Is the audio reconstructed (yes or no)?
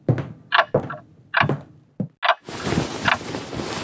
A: no